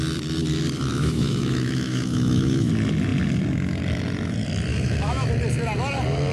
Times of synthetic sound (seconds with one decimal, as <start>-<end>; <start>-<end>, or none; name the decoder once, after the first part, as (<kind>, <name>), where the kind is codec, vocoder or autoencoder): 0.9-2.7 (autoencoder, DAC-VAE); 4.7-5.3